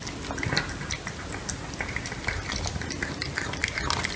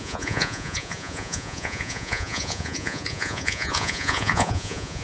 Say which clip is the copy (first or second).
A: second